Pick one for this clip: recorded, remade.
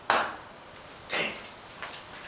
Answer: recorded